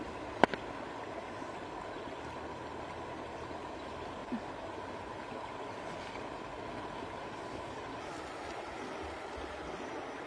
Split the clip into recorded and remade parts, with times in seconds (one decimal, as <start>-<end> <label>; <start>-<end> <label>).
0.0-10.3 recorded